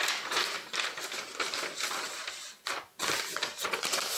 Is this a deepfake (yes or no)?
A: no